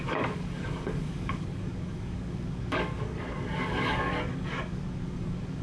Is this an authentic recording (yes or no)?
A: no